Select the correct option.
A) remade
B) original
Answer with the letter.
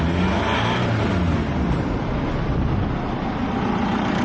B